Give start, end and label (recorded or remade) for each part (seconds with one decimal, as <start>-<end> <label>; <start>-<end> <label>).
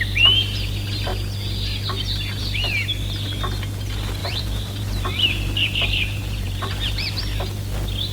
0.0-4.2 recorded; 4.2-7.2 remade; 7.2-8.1 recorded